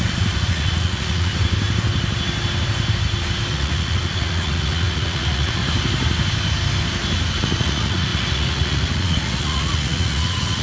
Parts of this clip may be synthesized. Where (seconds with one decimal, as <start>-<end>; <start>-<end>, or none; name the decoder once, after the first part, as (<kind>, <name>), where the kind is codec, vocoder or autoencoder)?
0.0-1.3 (vocoder, Vocos); 3.5-5.6; 7.4-10.6